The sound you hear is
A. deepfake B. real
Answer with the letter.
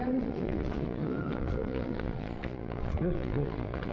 A